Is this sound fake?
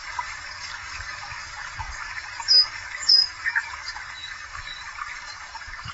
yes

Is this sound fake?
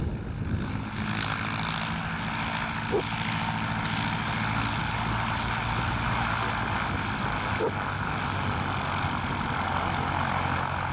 no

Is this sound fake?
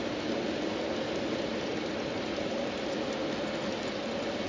no